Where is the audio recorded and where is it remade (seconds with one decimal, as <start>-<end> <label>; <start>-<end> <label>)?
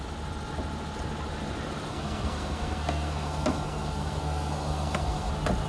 0.0-1.9 recorded; 1.9-5.3 remade; 5.3-5.7 recorded